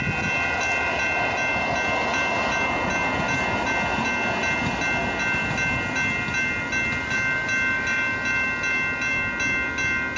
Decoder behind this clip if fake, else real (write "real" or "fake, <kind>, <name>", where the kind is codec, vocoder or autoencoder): real